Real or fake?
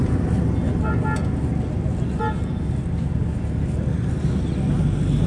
real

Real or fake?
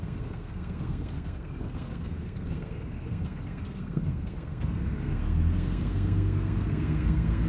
fake